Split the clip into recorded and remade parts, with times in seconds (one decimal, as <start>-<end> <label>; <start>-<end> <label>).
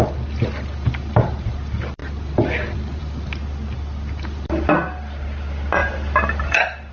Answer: 0.0-2.0 remade; 2.0-3.0 recorded; 3.0-6.9 remade